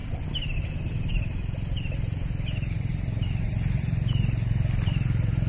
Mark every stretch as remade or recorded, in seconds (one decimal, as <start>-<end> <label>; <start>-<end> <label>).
0.0-1.1 recorded; 1.1-2.9 remade; 2.9-3.5 recorded; 3.5-5.5 remade